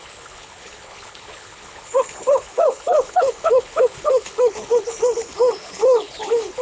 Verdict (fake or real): fake